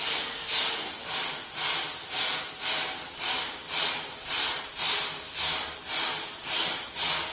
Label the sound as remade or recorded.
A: recorded